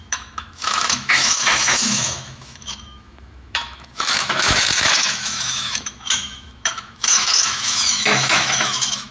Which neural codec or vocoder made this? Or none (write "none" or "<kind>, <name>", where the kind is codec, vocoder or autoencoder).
autoencoder, DAC-VAE